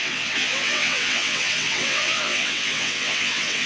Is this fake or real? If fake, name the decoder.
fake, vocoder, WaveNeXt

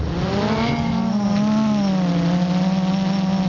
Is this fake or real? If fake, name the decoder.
real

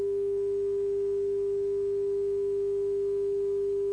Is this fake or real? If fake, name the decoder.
real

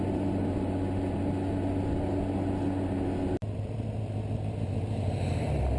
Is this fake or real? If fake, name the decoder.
real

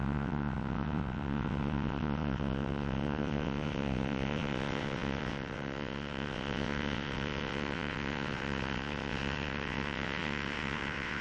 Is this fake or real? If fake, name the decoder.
fake, vocoder, WaveNeXt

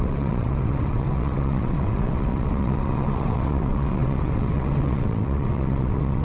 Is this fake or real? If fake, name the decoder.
fake, vocoder, WaveNeXt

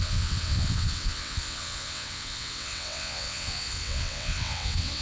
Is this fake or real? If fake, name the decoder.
fake, vocoder, WaveNeXt